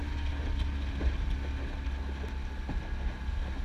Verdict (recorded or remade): recorded